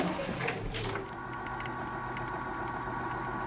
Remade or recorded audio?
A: recorded